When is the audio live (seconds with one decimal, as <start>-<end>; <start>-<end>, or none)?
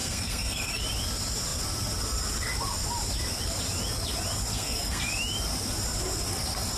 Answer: 0.8-4.5; 5.0-6.8